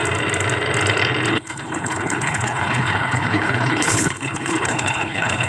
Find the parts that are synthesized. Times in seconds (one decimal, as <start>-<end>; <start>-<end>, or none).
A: 1.3-5.5